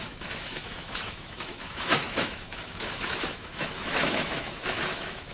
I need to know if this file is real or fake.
fake